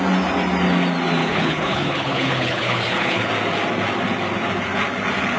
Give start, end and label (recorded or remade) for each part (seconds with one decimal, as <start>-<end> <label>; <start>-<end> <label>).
0.0-1.2 recorded; 1.2-3.3 remade; 3.3-5.4 recorded